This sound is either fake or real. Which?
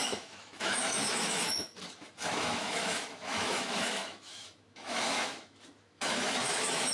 fake